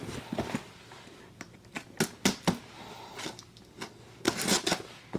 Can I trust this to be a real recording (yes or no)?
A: yes